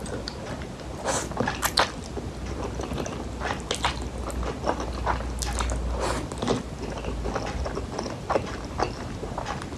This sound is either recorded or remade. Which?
recorded